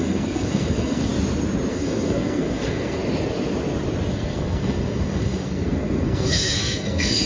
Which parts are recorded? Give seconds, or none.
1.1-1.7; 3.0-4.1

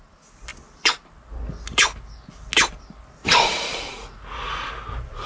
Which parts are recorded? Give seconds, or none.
0.0-3.2; 4.7-5.3

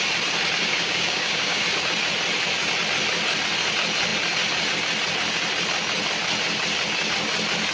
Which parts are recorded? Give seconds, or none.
0.0-0.7; 1.6-7.7

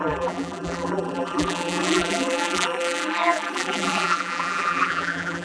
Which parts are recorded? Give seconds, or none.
none

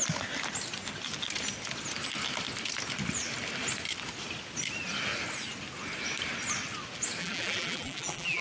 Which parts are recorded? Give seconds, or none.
0.0-7.2

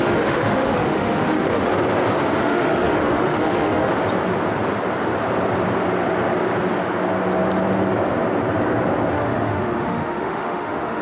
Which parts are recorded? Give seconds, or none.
1.7-2.4; 3.9-9.1